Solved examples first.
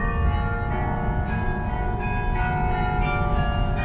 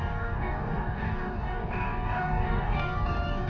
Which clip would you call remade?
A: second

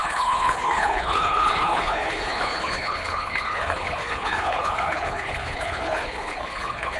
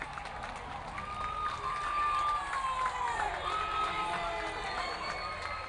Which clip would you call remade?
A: first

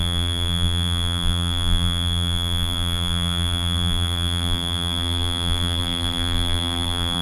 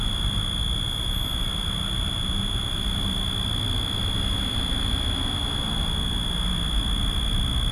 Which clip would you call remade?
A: first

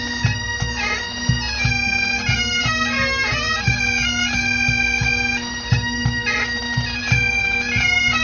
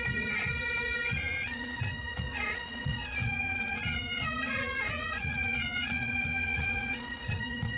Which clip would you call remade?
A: second